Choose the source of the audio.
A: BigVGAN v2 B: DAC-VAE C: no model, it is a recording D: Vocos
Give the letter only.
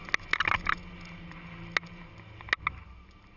C